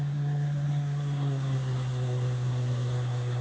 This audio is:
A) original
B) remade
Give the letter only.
B